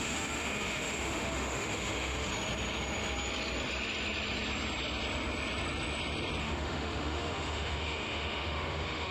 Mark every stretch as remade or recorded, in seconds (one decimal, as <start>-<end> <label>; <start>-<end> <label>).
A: 0.0-2.3 remade; 2.3-6.4 recorded; 6.4-9.1 remade